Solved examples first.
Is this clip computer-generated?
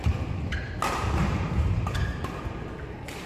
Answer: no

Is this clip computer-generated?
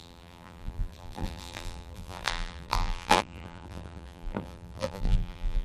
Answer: yes